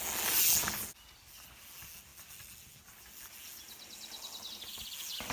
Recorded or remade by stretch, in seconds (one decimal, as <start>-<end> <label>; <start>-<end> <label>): 0.0-5.3 recorded